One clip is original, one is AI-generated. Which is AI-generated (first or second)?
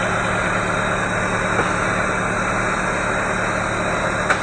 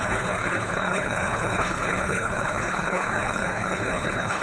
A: second